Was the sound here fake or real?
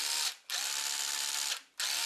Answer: real